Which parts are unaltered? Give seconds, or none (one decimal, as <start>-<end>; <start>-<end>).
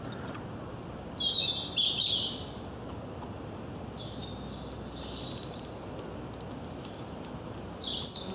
0.0-8.3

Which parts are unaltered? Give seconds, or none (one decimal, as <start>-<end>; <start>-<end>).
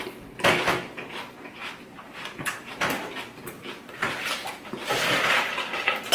0.0-1.6; 4.7-6.1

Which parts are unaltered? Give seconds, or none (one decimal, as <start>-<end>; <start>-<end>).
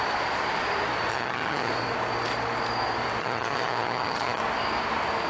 0.0-1.1; 1.7-3.2; 4.4-5.3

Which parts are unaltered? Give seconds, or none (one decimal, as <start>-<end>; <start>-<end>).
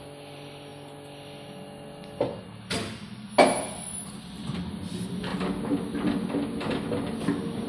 0.0-7.7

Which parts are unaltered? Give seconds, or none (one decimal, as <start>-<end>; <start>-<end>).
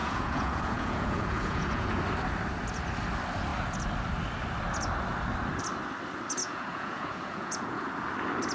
2.0-6.4; 7.9-8.5